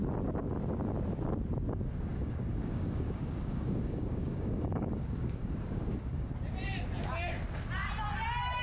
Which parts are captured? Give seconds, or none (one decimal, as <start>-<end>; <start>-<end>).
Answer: 0.0-2.1; 6.3-8.6